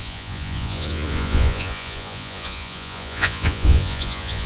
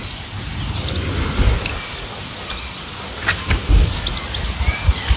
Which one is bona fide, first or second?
second